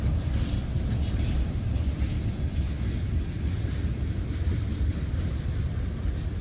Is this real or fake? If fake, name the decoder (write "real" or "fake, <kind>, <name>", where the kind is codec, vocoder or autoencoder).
real